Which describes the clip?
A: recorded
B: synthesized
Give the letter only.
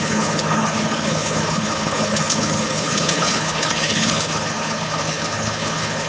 B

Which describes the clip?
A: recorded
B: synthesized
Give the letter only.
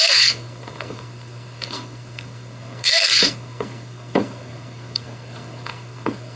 B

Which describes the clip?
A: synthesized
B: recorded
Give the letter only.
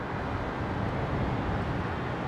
B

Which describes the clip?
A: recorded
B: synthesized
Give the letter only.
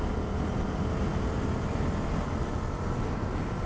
A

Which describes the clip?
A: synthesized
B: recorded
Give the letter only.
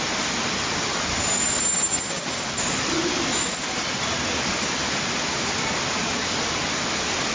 B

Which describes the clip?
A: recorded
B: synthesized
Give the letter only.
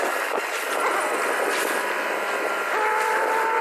A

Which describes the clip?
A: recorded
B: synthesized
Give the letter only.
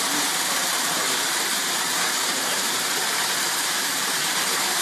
B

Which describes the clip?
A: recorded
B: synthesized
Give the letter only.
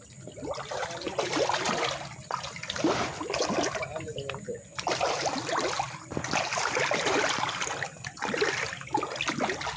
A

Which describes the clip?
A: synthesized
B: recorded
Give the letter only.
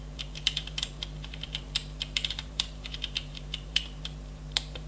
A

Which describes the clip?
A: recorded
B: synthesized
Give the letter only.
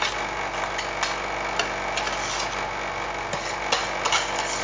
A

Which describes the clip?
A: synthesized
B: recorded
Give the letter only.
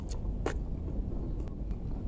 B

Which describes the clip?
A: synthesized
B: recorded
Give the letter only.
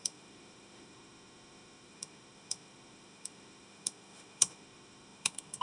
A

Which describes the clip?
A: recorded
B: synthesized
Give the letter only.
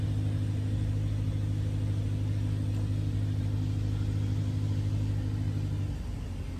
A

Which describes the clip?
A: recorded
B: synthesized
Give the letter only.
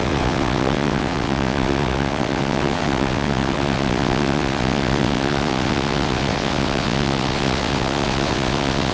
B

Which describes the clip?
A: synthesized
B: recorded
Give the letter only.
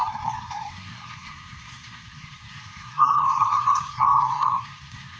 A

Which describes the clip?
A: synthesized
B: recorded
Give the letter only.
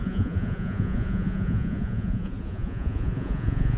A